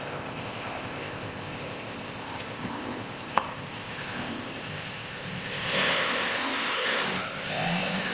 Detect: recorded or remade remade